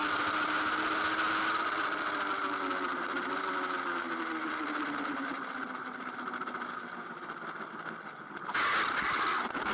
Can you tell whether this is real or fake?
real